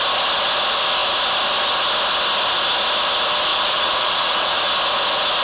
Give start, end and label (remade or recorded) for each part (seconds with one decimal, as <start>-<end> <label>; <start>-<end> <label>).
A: 0.0-3.5 recorded; 3.5-4.6 remade; 4.6-5.4 recorded